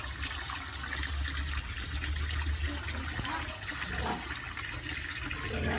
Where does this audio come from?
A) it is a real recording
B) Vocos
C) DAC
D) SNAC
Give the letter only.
A